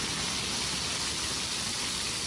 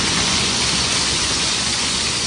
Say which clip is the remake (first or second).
second